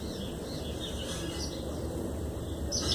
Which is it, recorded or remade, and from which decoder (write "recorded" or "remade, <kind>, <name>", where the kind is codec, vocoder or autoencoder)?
recorded